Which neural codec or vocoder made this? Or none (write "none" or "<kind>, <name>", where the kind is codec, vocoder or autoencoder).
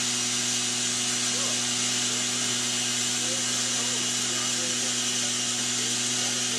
none